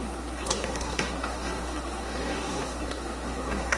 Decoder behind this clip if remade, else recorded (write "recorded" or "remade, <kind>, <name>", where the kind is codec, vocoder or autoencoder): remade, codec, SNAC